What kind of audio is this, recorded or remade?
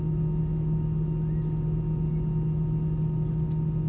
recorded